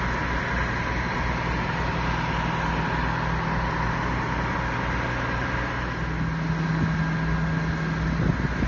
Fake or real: real